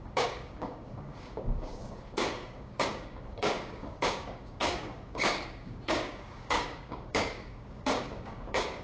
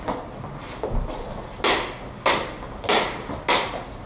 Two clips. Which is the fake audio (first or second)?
first